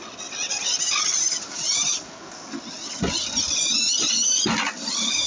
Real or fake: real